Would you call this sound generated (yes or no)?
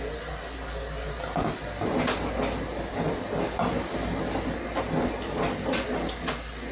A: no